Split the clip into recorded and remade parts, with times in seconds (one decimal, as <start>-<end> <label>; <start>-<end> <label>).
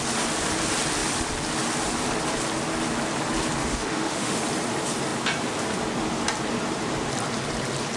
0.0-3.6 recorded; 3.6-4.4 remade; 4.4-8.0 recorded